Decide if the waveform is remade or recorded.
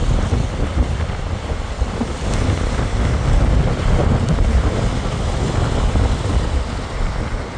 recorded